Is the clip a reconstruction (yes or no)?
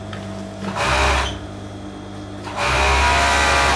no